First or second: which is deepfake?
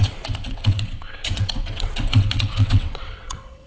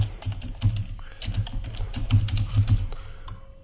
first